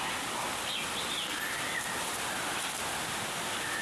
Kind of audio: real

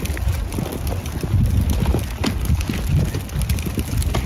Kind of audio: real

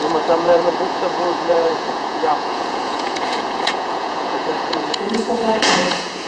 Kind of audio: fake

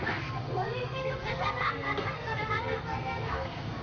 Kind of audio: fake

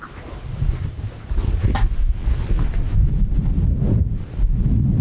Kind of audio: real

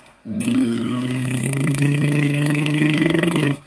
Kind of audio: fake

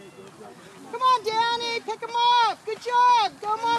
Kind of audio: real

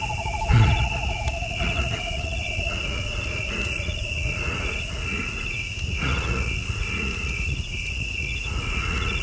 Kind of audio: fake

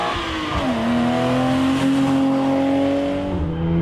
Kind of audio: real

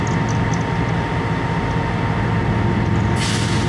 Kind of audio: real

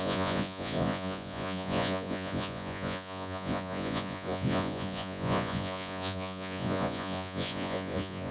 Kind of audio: fake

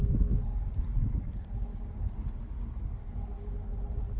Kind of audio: real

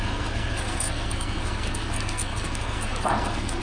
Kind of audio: fake